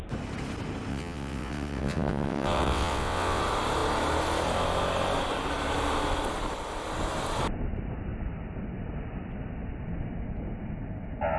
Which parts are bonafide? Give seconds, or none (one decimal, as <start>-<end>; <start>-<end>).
0.0-0.9; 3.4-11.4